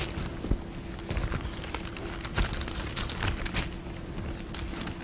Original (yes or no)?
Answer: yes